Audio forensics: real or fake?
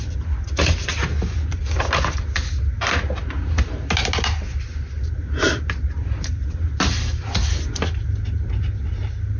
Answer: real